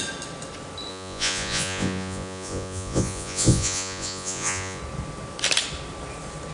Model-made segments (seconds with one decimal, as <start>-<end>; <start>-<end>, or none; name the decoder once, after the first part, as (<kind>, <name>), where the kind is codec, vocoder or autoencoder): 0.9-4.8 (vocoder, Vocos)